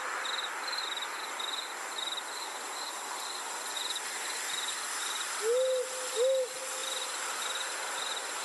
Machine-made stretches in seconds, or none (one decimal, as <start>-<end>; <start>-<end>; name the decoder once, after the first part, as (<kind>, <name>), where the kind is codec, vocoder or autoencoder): none